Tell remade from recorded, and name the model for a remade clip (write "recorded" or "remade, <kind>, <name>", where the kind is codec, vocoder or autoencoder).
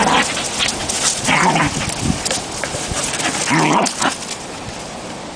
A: remade, vocoder, BigVGAN v2